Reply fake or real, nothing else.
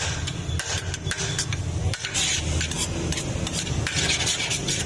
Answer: real